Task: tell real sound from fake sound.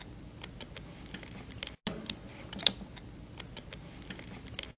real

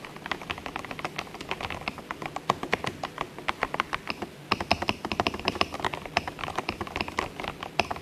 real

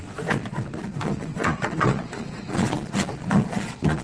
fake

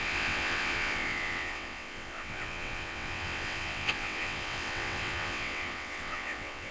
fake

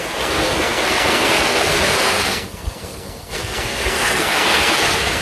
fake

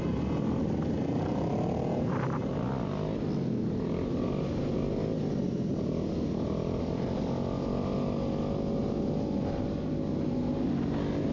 real